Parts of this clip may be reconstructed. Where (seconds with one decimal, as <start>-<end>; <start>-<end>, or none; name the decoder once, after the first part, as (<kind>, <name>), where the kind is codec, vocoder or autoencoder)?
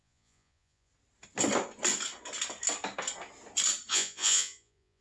0.0-0.9 (vocoder, Vocos); 3.9-5.0